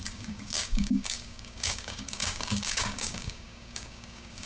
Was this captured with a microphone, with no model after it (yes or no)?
no